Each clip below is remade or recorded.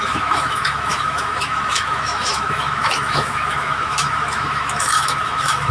remade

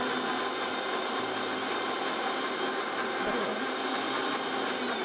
recorded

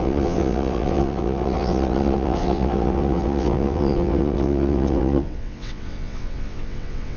remade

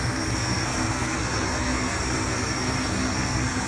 remade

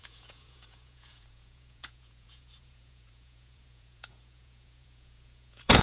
remade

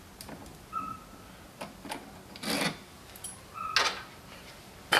recorded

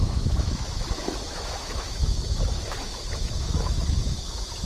remade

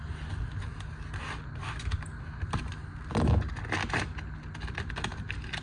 recorded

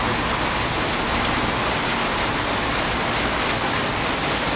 recorded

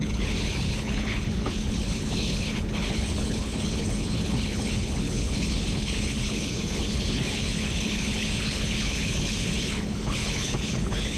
remade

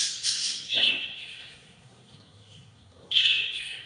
remade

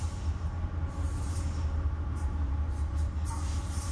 recorded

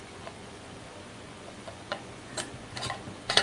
remade